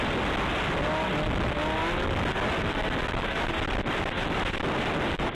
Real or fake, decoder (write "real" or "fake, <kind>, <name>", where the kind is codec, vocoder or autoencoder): real